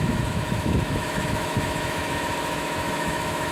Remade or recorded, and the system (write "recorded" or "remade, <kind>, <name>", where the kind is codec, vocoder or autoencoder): remade, autoencoder, DAC-VAE